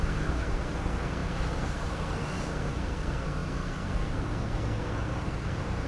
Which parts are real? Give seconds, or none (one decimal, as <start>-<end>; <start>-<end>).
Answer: none